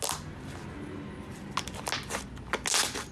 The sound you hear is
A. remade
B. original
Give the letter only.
B